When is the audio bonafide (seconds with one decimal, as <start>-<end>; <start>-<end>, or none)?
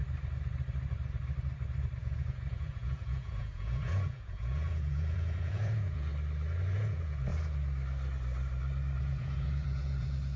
0.0-2.0; 6.1-6.7; 7.3-9.0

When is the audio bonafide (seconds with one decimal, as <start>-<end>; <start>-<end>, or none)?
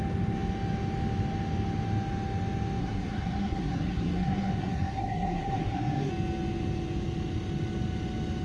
0.0-2.8; 6.1-8.4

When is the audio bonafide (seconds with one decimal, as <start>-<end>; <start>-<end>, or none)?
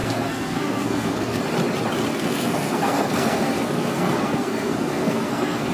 1.4-2.1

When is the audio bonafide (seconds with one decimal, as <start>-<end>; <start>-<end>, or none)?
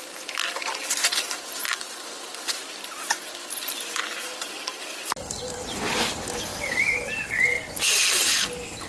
6.5-8.9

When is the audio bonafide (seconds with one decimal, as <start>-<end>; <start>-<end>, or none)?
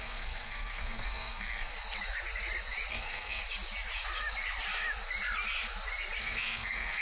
1.7-2.9; 3.4-6.2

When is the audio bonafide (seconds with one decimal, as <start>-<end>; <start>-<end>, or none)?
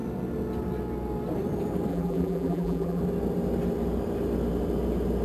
0.0-1.9; 3.0-5.2